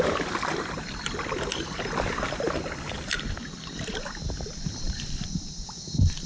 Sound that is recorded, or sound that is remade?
recorded